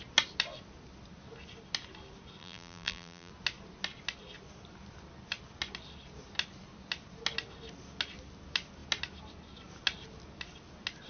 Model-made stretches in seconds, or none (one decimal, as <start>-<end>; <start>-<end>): 2.4-3.3